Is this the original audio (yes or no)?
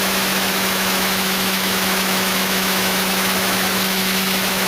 no